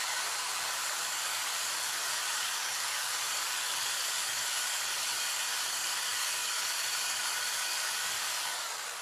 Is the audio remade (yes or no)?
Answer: yes